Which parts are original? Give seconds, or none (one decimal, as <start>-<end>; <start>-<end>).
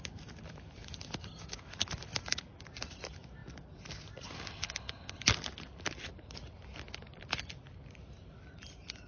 0.8-1.9; 3.4-5.9